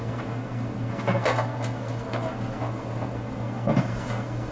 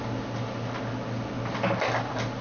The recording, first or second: second